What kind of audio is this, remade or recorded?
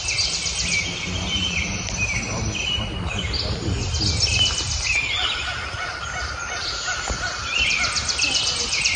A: recorded